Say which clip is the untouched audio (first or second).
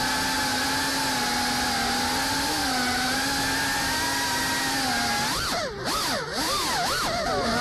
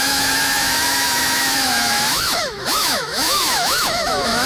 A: first